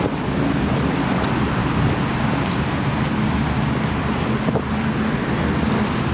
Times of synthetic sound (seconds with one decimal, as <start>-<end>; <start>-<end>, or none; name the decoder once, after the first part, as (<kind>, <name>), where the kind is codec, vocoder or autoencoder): none